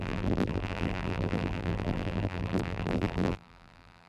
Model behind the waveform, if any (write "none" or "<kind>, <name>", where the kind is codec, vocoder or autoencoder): vocoder, BigVGAN v2